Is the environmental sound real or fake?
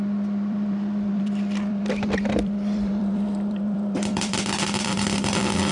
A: fake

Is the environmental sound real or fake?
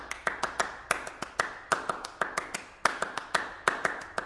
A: real